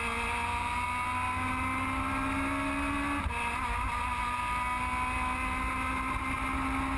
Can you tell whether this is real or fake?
real